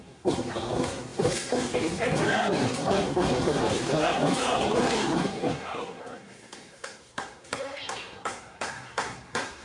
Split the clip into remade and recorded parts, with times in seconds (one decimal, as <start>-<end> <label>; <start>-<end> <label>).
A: 0.0-9.6 remade